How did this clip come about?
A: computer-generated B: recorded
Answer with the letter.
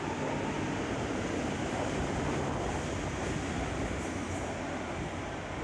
B